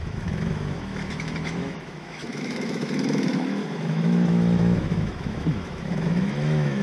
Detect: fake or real fake